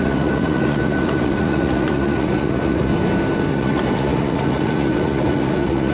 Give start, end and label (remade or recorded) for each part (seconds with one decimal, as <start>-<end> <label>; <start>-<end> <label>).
0.0-2.9 remade; 2.9-3.5 recorded; 3.5-5.9 remade